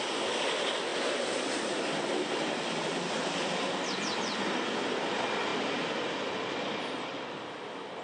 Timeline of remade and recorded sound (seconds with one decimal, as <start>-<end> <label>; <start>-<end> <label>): 0.0-8.0 recorded